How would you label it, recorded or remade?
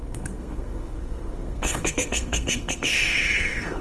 remade